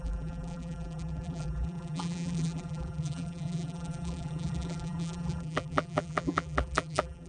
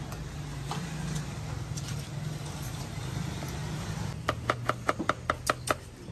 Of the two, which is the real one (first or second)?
second